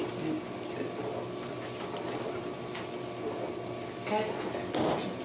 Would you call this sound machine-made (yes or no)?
no